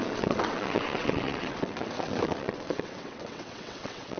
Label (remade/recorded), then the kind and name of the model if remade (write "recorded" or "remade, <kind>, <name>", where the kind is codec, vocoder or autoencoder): remade, vocoder, WaveNeXt